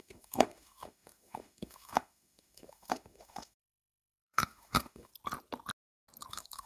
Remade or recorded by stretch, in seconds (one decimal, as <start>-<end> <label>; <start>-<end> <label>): 0.0-5.1 remade; 5.1-6.3 recorded; 6.3-6.7 remade